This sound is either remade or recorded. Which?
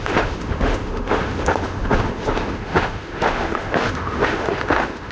remade